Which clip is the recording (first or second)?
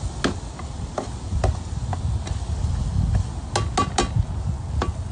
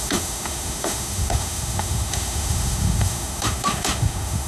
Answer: first